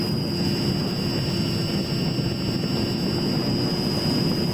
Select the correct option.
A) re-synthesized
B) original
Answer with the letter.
B